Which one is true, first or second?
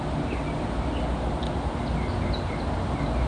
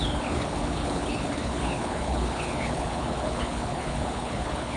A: first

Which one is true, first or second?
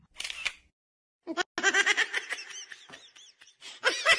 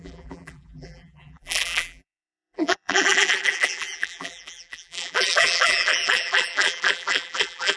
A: first